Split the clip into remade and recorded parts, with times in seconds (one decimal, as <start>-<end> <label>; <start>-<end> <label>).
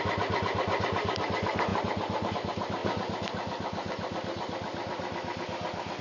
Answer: 0.0-2.8 remade; 2.8-6.0 recorded